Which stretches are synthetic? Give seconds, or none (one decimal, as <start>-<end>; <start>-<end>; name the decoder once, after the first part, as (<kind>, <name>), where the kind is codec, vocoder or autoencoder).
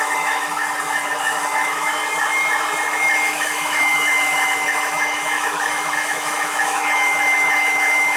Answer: 0.0-0.6 (autoencoder, DAC-VAE); 1.2-2.0; 2.9-8.2